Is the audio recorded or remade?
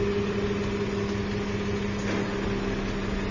recorded